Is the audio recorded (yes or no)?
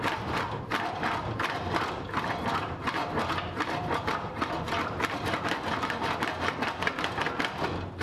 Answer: yes